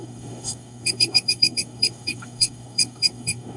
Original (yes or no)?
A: no